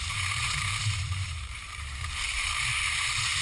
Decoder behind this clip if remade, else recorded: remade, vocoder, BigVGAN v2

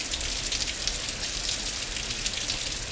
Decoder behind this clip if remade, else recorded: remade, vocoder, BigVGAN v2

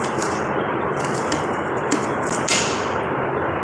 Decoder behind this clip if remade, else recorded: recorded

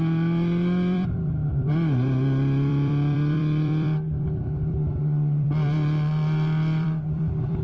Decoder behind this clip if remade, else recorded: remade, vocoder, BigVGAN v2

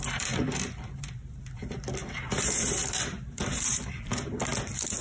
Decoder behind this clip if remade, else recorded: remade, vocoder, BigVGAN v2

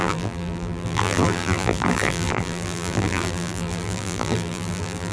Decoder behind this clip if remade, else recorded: remade, vocoder, BigVGAN v2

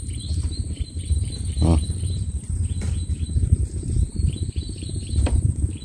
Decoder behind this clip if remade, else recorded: remade, vocoder, BigVGAN v2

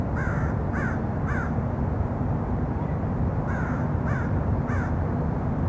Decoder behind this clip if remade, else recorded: recorded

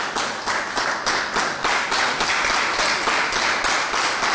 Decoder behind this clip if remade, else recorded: recorded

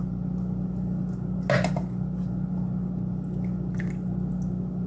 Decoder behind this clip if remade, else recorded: recorded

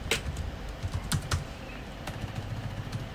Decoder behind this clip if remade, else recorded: recorded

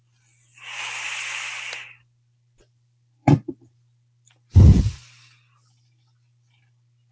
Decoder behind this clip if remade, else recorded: remade, vocoder, BigVGAN v2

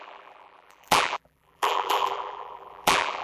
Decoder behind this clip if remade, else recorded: remade, vocoder, BigVGAN v2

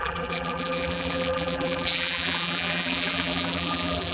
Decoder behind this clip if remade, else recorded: remade, vocoder, BigVGAN v2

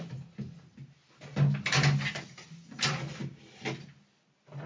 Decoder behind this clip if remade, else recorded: recorded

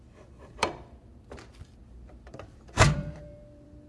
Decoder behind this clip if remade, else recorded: remade, vocoder, BigVGAN v2